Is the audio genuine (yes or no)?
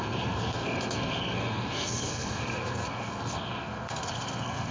no